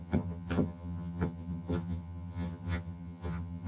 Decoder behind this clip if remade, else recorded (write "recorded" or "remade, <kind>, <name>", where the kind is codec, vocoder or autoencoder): remade, vocoder, HiFi-GAN